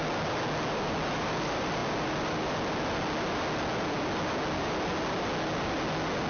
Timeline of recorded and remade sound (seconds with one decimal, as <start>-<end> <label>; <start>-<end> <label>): 0.0-6.3 recorded